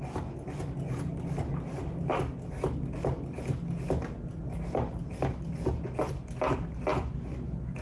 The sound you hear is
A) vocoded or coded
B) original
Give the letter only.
B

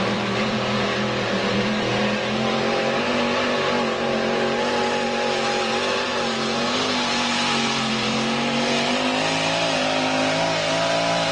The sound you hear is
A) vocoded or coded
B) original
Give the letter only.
A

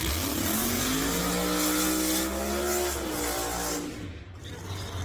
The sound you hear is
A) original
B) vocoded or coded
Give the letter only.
A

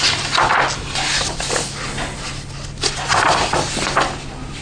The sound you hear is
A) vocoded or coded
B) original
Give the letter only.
B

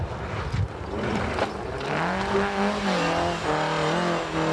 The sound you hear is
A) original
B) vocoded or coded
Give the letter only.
A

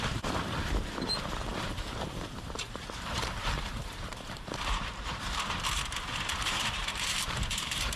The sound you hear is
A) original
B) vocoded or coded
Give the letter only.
B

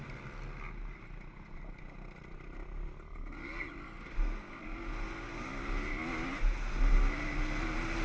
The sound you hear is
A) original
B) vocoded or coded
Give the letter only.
A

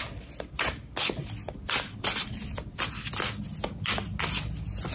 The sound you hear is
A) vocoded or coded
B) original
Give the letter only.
B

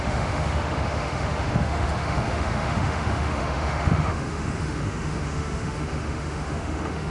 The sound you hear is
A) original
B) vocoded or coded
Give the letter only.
B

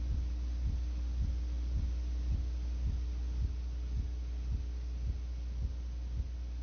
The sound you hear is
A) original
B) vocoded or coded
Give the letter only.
A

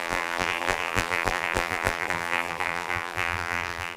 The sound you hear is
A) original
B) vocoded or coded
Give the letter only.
B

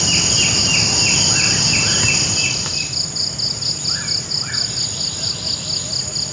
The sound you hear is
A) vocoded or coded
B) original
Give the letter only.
B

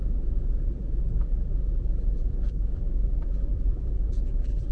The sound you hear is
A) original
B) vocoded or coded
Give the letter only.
B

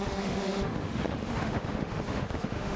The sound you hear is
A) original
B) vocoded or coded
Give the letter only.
B